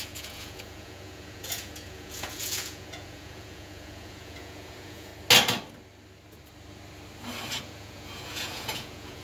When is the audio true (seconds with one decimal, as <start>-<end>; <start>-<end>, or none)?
5.1-7.6